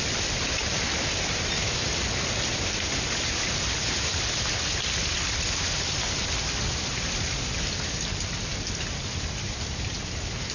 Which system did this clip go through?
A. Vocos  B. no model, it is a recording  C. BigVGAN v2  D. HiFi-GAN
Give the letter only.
B